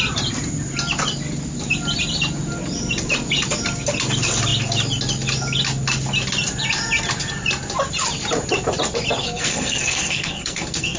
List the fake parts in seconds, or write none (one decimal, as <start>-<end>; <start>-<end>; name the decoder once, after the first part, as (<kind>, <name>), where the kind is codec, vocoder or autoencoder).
9.2-11.0 (codec, SNAC)